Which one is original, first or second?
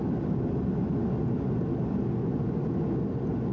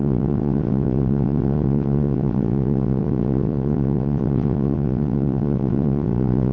first